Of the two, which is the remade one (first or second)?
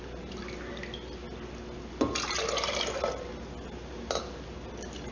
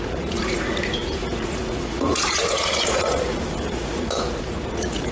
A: second